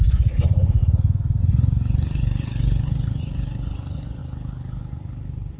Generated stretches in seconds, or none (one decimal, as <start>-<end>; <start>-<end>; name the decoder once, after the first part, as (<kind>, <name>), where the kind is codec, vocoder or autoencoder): 0.0-0.8 (vocoder, Vocos); 1.4-4.2